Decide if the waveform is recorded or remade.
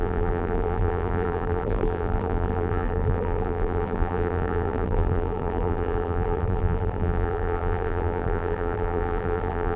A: remade